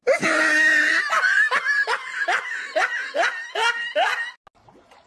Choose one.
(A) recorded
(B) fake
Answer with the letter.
A